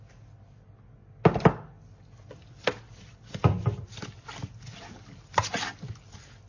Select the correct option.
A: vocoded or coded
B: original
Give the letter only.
B